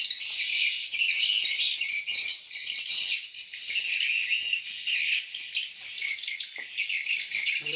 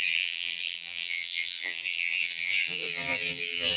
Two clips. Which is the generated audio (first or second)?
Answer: second